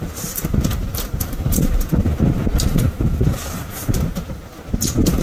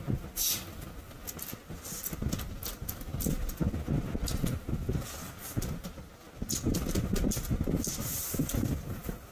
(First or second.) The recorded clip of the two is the second